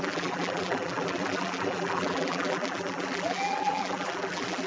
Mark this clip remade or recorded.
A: remade